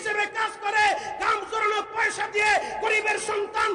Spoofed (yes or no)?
no